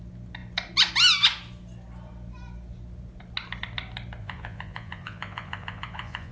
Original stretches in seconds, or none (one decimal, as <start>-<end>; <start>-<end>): 0.0-4.2